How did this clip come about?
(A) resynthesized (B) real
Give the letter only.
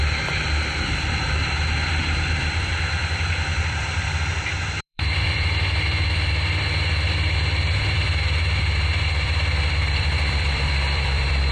A